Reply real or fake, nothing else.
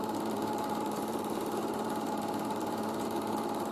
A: fake